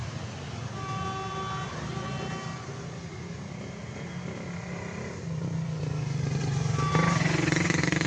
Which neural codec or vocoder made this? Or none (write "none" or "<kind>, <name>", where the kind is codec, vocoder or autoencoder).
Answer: none